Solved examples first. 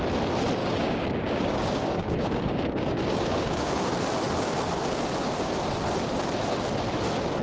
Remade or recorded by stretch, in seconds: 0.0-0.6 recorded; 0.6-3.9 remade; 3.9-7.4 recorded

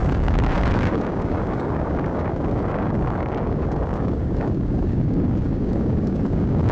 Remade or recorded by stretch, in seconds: 0.0-6.7 remade

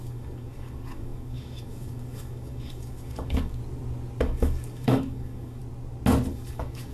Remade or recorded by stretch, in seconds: 0.0-3.6 remade; 3.6-4.2 recorded; 4.2-5.6 remade; 5.6-6.3 recorded; 6.3-6.9 remade